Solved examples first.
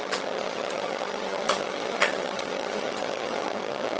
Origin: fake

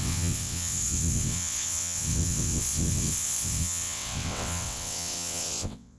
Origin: fake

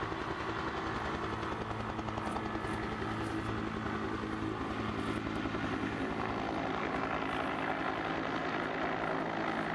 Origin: real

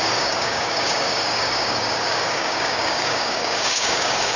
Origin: fake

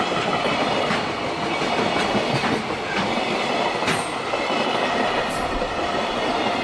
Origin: real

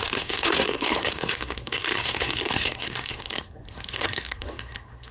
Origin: fake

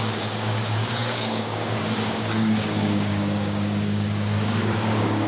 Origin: fake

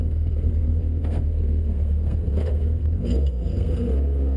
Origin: fake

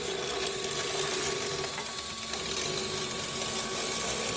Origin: real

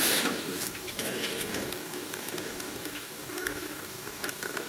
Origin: fake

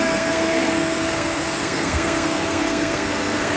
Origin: fake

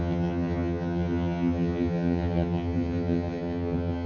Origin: fake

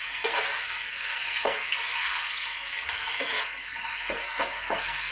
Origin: fake